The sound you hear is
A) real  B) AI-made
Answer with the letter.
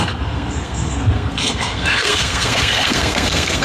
B